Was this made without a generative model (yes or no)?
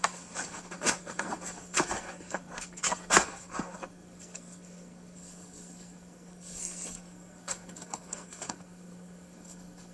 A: no